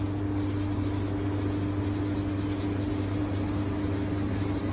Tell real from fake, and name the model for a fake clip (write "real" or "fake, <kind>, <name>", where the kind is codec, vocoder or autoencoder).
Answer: real